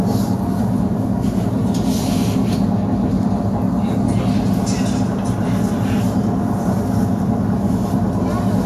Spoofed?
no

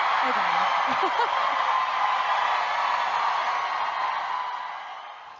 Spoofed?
no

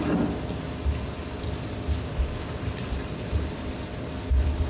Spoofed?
no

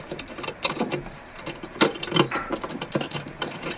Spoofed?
yes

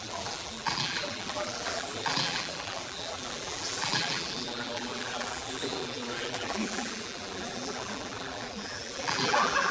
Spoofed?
yes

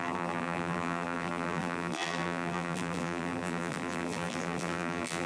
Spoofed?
yes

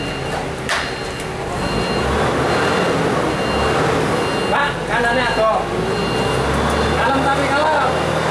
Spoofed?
no